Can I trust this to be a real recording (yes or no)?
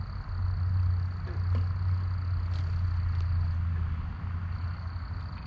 yes